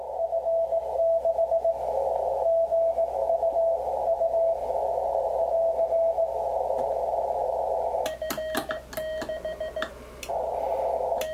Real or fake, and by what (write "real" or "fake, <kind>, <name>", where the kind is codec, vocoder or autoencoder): real